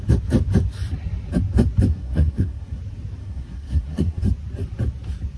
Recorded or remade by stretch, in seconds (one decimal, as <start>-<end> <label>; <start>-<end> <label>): 0.0-1.9 recorded; 1.9-2.8 remade; 2.8-3.2 recorded; 3.2-4.2 remade; 4.2-5.4 recorded